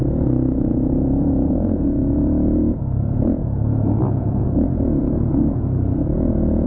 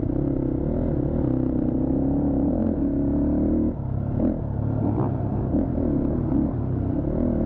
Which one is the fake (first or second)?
first